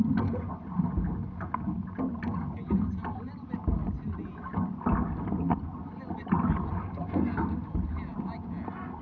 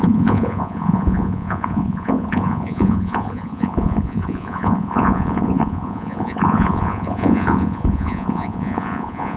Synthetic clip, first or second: second